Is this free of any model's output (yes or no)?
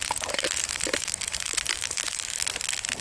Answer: no